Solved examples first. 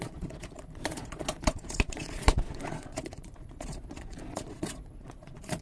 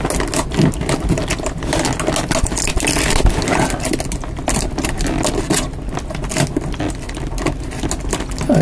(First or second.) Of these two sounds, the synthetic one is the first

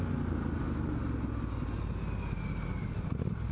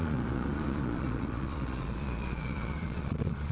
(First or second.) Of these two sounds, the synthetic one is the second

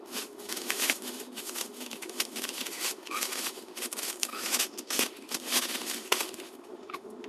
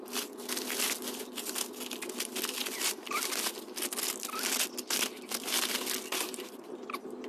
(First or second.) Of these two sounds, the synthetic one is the first